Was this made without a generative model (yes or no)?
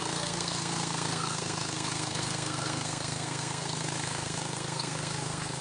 no